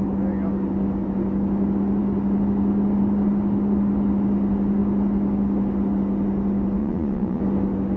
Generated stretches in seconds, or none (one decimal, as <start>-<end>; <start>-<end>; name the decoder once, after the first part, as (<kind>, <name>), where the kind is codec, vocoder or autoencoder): 6.8-7.4 (vocoder, Vocos)